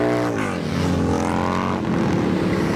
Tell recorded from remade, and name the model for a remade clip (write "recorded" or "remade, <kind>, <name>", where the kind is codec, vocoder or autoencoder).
recorded